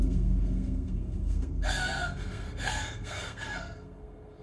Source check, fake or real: fake